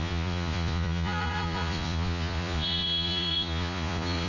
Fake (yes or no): yes